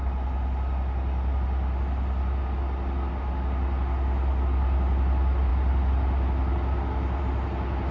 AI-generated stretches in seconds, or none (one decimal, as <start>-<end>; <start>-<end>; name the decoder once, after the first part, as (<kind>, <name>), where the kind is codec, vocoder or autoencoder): none